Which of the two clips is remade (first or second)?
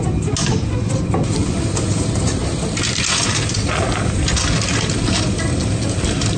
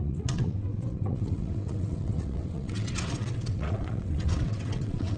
second